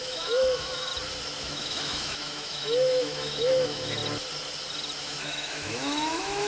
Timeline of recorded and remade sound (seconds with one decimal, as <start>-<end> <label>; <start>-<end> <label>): 0.0-0.9 remade; 0.9-1.4 recorded; 1.4-4.0 remade; 4.0-5.0 recorded; 5.0-6.5 remade